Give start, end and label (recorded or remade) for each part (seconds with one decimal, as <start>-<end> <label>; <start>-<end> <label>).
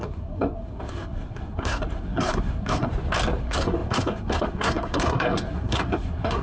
0.0-2.9 remade; 2.9-3.4 recorded; 3.4-6.4 remade